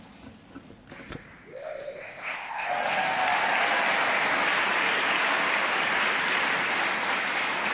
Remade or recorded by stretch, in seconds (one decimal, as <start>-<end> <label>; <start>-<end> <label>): 0.0-1.5 recorded; 1.5-2.7 remade; 2.7-7.7 recorded